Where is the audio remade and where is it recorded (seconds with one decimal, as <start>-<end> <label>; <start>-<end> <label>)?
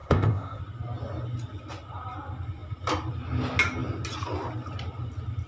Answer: 0.0-0.6 remade; 0.6-5.5 recorded